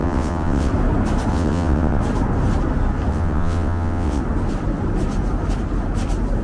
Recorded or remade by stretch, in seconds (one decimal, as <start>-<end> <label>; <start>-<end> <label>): 0.0-0.7 remade; 0.7-1.3 recorded; 1.3-2.0 remade; 2.0-3.1 recorded; 3.1-4.2 remade; 4.2-6.4 recorded